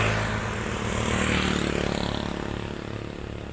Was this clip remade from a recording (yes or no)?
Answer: no